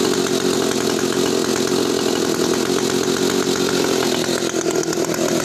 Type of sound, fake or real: real